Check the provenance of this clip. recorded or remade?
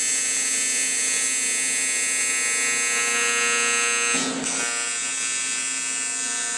recorded